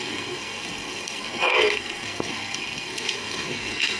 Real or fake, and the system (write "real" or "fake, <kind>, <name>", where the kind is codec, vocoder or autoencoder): fake, codec, SNAC